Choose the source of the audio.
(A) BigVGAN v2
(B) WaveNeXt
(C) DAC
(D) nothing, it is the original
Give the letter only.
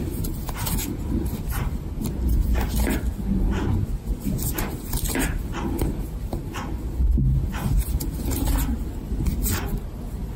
D